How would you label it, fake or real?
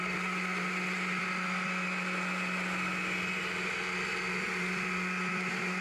real